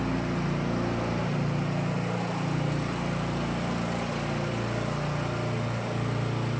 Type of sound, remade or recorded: recorded